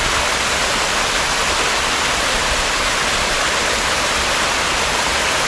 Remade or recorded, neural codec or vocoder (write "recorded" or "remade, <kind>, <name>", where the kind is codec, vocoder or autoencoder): recorded